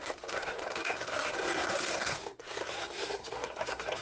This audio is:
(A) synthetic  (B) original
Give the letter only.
A